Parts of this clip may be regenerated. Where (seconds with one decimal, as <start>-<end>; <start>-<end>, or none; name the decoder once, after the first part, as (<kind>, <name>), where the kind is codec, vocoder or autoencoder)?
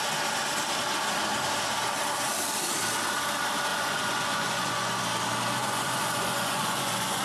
3.7-5.0 (vocoder, Vocos); 5.6-7.2